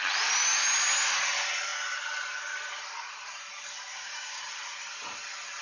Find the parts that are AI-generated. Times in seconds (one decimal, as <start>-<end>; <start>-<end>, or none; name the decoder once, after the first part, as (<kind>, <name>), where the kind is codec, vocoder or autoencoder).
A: 3.9-4.4 (codec, DAC)